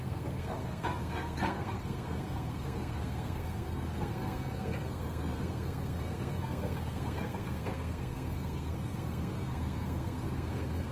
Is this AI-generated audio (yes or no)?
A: yes